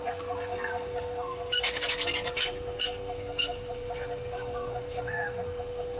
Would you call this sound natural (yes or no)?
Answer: no